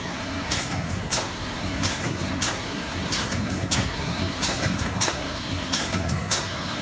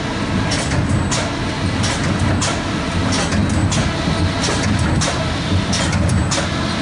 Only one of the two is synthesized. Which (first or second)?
first